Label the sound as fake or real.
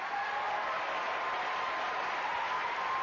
real